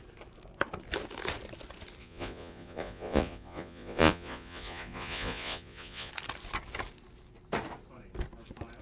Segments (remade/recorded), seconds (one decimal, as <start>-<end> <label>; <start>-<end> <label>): 0.0-2.0 recorded; 2.0-6.1 remade; 6.1-8.8 recorded